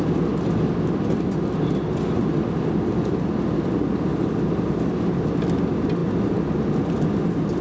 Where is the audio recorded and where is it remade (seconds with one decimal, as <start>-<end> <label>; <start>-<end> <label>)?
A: 0.0-7.6 recorded